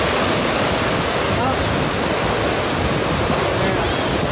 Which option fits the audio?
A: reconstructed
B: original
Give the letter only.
B